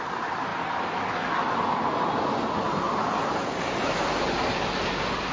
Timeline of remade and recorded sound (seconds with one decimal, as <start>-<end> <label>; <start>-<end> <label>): 0.0-5.3 recorded